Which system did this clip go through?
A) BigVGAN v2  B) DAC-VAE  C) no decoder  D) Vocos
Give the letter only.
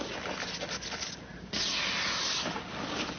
C